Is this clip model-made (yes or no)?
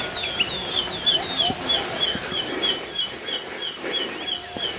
no